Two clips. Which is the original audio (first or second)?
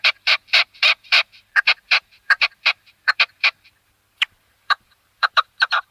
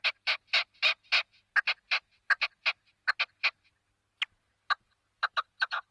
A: second